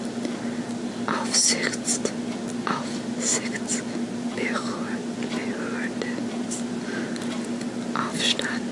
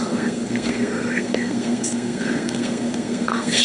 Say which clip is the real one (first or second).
first